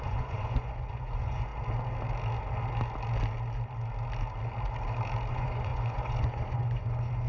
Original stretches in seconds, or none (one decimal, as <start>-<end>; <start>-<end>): 1.5-5.3